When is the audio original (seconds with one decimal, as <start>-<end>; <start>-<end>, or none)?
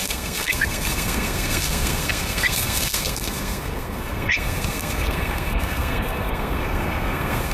none